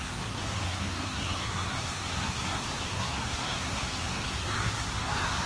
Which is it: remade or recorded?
remade